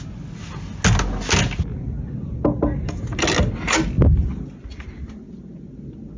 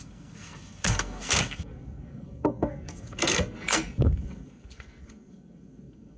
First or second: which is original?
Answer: first